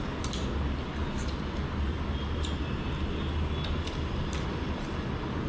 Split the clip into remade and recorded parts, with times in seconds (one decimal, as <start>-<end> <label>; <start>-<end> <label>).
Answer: 0.0-5.5 recorded